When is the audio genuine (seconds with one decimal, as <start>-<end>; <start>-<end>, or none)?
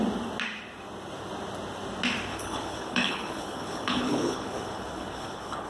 0.0-2.3